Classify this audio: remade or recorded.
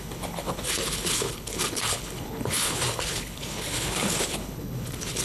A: remade